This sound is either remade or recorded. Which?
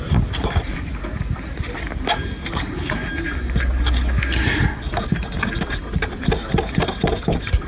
recorded